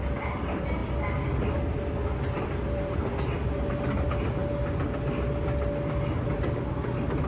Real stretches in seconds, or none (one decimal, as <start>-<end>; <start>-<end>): 0.0-7.3